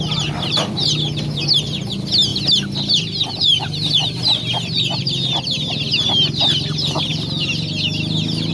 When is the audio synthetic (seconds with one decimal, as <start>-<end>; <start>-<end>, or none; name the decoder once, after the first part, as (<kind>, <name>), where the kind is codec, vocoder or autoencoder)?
none